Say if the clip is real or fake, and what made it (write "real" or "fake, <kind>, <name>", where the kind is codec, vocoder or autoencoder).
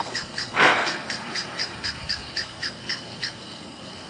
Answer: fake, codec, SNAC